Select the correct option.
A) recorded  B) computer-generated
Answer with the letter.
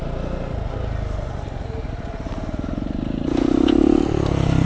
A